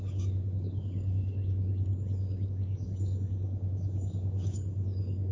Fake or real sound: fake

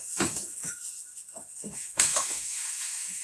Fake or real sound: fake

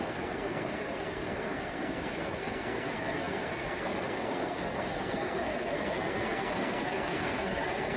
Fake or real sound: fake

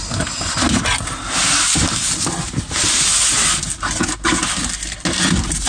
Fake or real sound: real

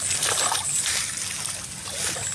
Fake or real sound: real